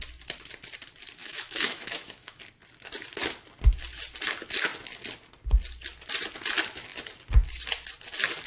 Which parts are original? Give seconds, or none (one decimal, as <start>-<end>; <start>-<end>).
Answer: 0.0-1.2; 2.4-8.5